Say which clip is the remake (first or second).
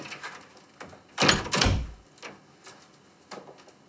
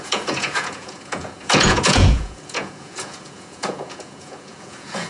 second